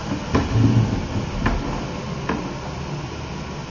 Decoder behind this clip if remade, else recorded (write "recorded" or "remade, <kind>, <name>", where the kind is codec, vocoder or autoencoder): recorded